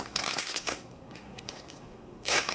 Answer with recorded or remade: remade